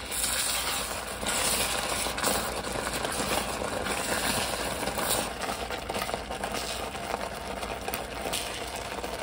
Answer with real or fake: real